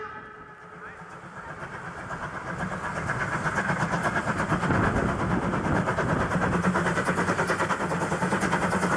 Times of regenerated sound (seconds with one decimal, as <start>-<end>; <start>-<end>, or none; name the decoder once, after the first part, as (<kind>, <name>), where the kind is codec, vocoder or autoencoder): none